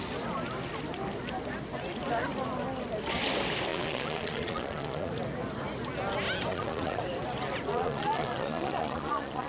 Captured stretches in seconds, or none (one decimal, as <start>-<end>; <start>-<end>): 0.0-3.7; 5.1-6.5; 7.0-7.7